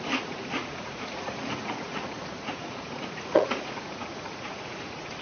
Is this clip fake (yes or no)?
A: yes